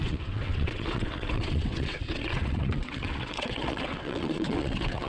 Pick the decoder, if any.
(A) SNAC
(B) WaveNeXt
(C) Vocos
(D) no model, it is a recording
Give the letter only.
B